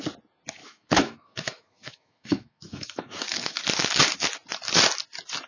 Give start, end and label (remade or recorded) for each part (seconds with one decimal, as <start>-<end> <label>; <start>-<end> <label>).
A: 0.0-0.6 recorded; 0.6-3.6 remade; 3.6-5.5 recorded